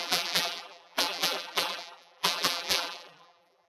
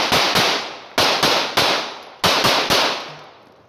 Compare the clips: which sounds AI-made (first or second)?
first